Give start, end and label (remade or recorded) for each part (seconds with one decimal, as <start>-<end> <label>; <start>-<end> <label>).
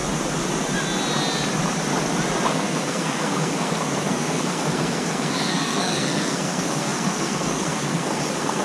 0.0-2.5 recorded; 2.5-8.6 remade